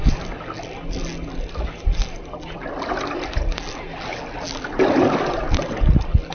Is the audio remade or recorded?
recorded